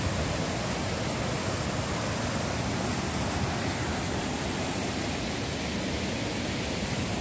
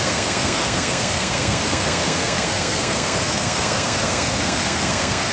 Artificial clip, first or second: second